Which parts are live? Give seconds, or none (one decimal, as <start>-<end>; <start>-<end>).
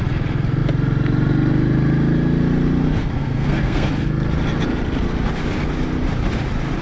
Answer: 0.0-3.0; 3.9-6.8